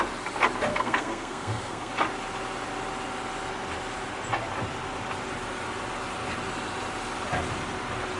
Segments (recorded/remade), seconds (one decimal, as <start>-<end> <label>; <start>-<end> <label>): 0.0-0.7 recorded; 0.7-1.9 remade; 1.9-8.2 recorded